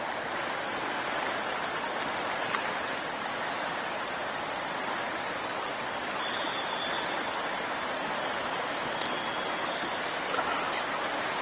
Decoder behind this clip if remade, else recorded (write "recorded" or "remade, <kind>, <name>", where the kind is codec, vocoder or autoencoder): recorded